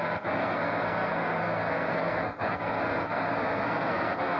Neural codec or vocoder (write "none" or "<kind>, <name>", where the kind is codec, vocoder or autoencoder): codec, SNAC